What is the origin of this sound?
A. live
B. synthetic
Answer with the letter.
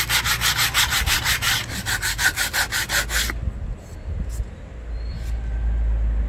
A